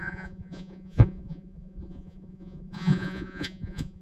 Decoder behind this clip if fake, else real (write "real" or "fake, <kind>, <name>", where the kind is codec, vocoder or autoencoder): fake, vocoder, Vocos